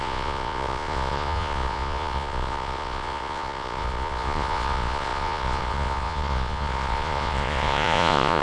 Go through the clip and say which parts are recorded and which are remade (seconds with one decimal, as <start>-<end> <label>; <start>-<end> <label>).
0.0-8.4 remade